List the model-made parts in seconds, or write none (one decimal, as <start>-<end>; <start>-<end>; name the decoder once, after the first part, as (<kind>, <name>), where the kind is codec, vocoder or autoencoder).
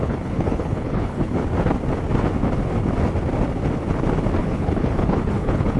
0.0-1.4 (codec, HILCodec); 4.4-5.8